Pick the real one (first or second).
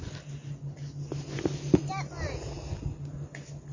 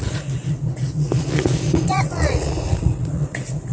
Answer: first